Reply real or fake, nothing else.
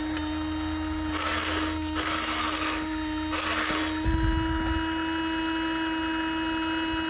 real